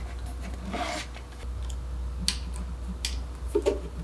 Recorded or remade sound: recorded